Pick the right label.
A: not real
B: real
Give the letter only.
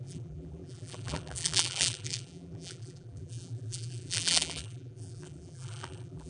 A